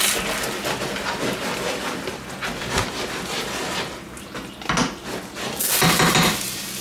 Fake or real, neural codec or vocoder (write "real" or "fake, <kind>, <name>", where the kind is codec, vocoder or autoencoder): real